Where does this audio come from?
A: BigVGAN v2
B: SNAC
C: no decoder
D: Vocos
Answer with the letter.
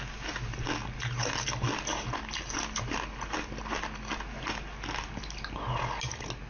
C